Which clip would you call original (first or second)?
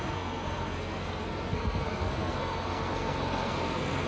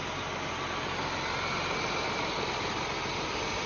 second